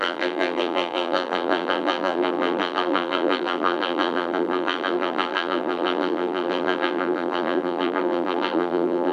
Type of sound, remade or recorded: remade